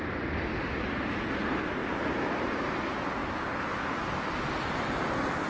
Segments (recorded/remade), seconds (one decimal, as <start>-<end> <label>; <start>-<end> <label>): 0.0-1.8 recorded; 1.8-2.6 remade; 2.6-5.5 recorded